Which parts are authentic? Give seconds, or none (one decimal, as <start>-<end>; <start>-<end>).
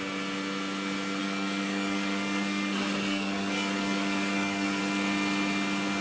0.0-1.2; 4.8-6.0